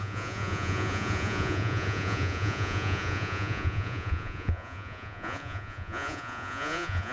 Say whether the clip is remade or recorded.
remade